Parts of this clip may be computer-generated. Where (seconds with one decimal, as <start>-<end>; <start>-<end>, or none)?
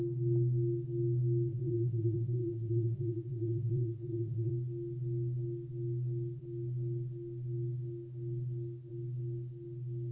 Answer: 1.5-4.5